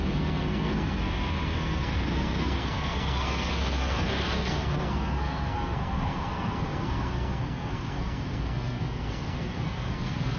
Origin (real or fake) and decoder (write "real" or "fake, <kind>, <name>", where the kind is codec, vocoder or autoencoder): fake, codec, SNAC